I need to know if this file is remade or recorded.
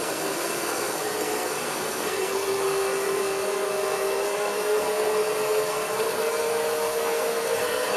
remade